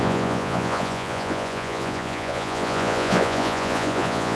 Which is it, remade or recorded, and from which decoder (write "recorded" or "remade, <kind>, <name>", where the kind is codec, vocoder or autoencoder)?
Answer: remade, vocoder, Vocos